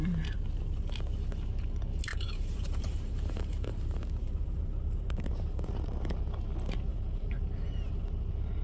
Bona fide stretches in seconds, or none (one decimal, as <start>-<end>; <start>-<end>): 0.0-2.1; 5.7-6.9; 7.9-8.6